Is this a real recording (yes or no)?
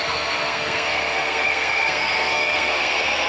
no